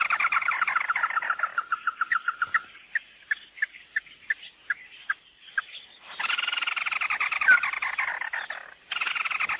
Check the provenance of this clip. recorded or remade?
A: recorded